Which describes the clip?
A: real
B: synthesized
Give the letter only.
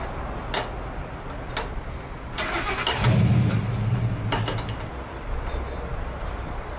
A